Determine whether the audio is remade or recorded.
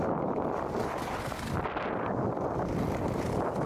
recorded